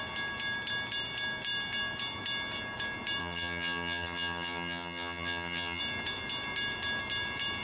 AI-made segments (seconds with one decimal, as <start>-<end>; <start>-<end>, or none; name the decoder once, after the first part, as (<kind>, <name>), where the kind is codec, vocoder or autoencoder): 3.2-5.8 (vocoder, HiFi-GAN)